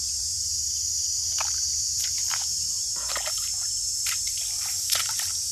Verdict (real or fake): fake